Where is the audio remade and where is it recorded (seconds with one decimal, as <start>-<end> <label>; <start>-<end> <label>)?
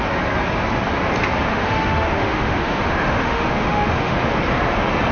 0.0-1.5 recorded; 1.5-4.3 remade; 4.3-5.1 recorded